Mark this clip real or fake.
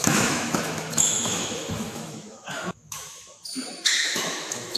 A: fake